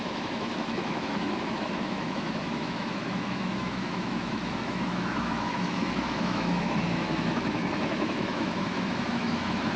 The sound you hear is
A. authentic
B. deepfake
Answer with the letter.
B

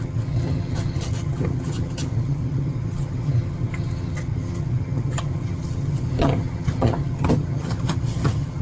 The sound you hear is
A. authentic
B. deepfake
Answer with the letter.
B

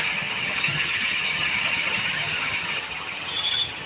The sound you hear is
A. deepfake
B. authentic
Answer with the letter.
A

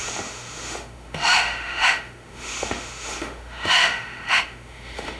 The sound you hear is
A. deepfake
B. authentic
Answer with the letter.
A